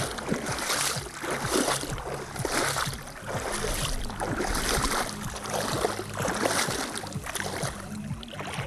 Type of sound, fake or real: real